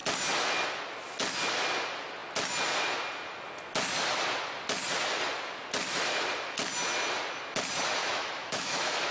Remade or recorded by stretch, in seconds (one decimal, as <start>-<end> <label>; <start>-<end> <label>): 0.0-8.0 recorded; 8.0-9.1 remade